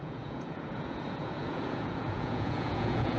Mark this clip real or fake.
fake